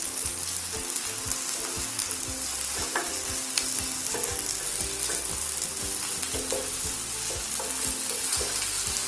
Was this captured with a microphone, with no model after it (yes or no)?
yes